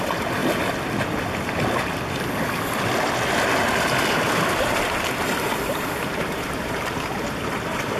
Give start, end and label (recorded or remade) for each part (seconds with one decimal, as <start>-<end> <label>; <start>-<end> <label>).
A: 0.0-0.4 remade; 0.4-5.2 recorded; 5.2-8.0 remade